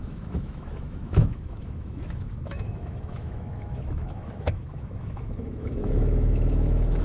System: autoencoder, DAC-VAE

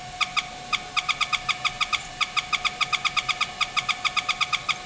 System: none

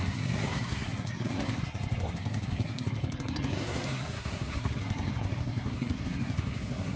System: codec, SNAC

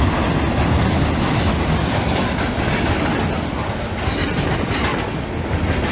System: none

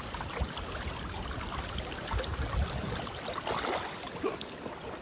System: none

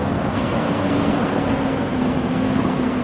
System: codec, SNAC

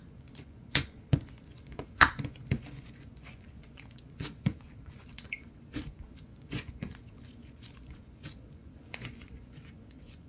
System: vocoder, Vocos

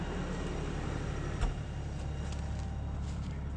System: none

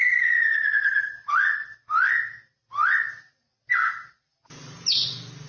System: none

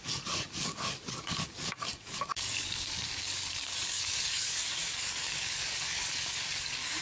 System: codec, DAC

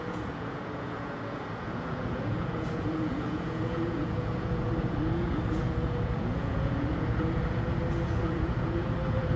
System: vocoder, Vocos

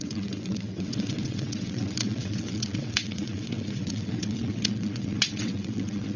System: vocoder, WaveNeXt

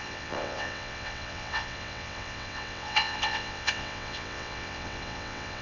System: vocoder, WaveNeXt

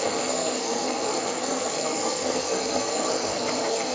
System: codec, SNAC